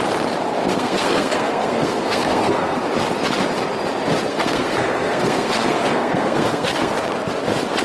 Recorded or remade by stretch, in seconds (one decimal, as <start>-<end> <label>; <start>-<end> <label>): 0.0-0.7 recorded; 0.7-2.8 remade; 2.8-4.3 recorded; 4.3-6.9 remade; 6.9-7.8 recorded